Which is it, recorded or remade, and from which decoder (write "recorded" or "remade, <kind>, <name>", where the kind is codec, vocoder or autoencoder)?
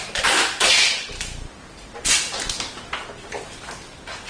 recorded